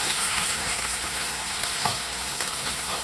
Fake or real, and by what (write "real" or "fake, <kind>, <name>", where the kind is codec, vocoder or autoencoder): fake, codec, SNAC